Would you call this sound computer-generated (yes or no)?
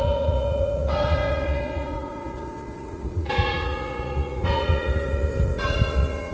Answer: yes